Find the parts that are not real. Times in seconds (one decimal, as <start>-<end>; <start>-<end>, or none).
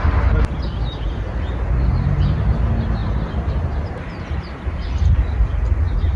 3.0-4.0